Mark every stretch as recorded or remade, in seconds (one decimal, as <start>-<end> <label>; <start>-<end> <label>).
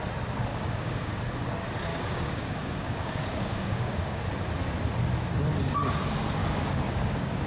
0.0-0.5 recorded; 0.5-1.2 remade; 1.2-1.9 recorded; 1.9-4.2 remade; 4.2-6.4 recorded; 6.4-7.5 remade